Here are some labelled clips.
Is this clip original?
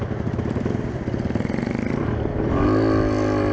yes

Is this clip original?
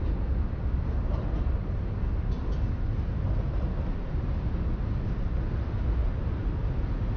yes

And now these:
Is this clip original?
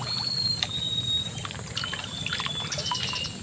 yes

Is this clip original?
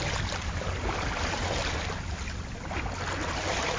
yes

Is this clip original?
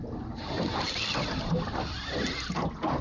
yes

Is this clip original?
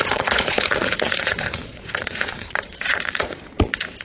no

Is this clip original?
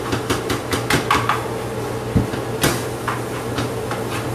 yes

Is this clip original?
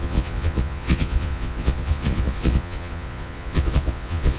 no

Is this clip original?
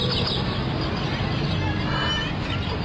yes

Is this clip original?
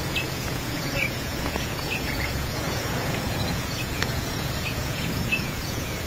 no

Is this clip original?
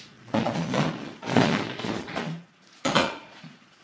no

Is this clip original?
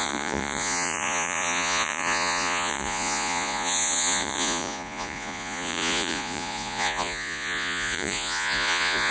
no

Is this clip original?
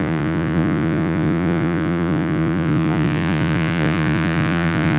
no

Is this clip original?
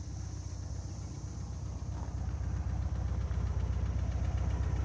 yes